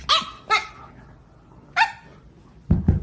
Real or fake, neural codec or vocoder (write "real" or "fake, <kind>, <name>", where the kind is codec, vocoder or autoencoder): real